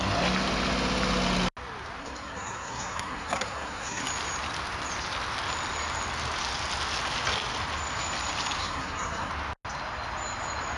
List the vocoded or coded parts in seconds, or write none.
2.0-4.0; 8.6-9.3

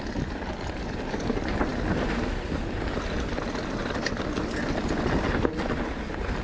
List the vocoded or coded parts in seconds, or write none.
none

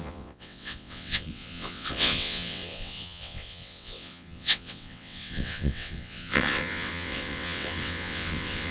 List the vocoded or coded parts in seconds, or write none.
0.0-8.7

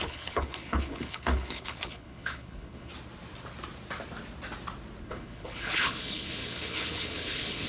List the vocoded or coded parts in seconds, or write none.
0.0-2.9; 5.0-7.7

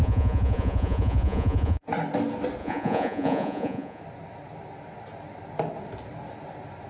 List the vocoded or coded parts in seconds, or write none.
0.0-1.8; 2.6-4.0

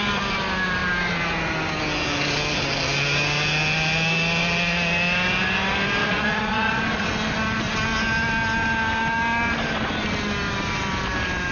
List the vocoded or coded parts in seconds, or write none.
6.0-6.8

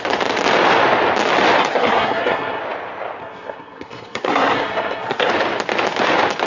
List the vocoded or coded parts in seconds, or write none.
1.6-2.6; 3.2-5.3